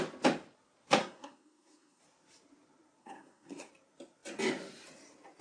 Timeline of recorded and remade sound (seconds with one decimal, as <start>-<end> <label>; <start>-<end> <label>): 0.0-1.0 recorded; 1.0-2.0 remade; 2.0-3.0 recorded; 3.0-3.7 remade; 3.7-5.4 recorded